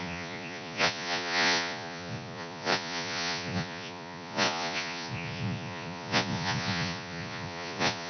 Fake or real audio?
fake